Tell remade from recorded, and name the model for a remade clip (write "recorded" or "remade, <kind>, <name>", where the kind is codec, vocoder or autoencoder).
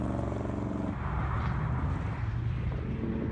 recorded